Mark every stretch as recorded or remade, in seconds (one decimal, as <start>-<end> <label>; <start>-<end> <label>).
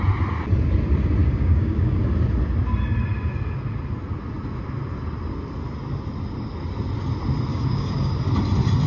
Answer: 0.0-1.2 recorded; 1.2-2.0 remade; 2.0-7.5 recorded; 7.5-8.1 remade; 8.1-8.9 recorded